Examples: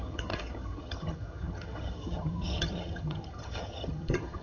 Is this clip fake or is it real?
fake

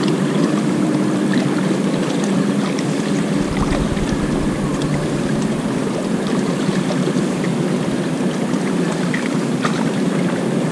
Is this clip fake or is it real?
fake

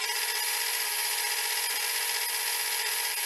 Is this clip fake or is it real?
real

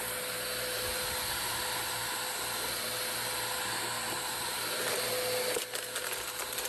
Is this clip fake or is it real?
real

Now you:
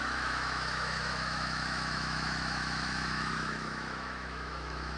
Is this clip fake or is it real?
fake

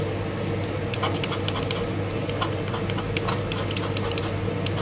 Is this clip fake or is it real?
real